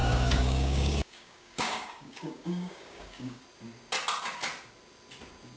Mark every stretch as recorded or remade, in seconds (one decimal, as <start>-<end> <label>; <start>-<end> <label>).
0.0-3.4 remade; 3.4-5.6 recorded